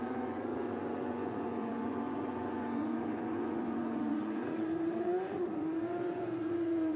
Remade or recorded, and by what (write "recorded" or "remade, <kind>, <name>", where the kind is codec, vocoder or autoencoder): remade, vocoder, Vocos